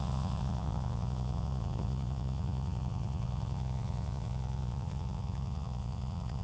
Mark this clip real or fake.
fake